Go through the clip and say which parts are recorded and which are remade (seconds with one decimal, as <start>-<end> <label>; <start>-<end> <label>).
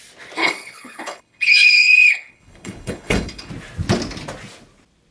0.0-0.4 recorded; 0.4-3.5 remade; 3.5-5.1 recorded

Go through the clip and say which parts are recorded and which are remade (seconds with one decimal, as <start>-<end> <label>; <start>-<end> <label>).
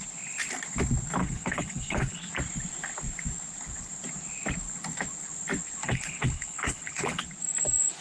0.0-1.2 recorded; 1.2-2.3 remade; 2.3-5.8 recorded; 5.8-7.2 remade; 7.2-8.0 recorded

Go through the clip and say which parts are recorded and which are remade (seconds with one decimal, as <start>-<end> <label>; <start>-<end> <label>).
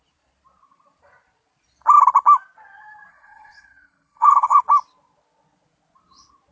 0.0-3.1 recorded; 3.1-4.6 remade; 4.6-6.5 recorded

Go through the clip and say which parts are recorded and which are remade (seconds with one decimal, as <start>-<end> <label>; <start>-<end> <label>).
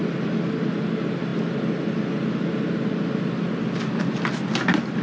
0.0-5.0 recorded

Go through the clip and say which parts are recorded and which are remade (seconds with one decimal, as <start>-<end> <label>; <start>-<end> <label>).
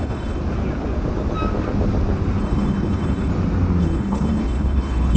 0.0-0.4 remade; 0.4-2.4 recorded; 2.4-3.3 remade; 3.3-3.8 recorded; 3.8-5.2 remade